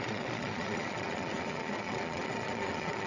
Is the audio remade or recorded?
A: remade